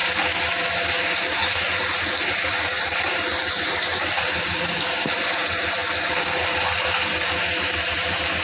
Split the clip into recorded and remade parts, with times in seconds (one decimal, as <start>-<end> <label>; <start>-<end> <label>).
0.0-1.1 recorded; 1.1-5.8 remade; 5.8-7.6 recorded; 7.6-8.4 remade